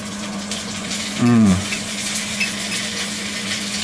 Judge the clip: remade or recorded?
remade